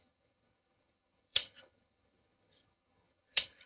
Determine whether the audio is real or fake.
fake